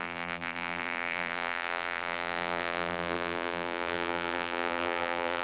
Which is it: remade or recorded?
remade